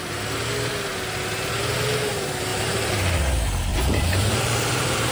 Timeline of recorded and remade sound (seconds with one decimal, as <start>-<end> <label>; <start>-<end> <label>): 0.0-2.5 recorded; 2.5-3.2 remade; 3.2-3.7 recorded; 3.7-5.1 remade